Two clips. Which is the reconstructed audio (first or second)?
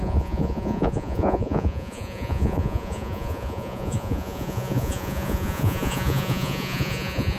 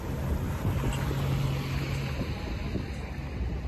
first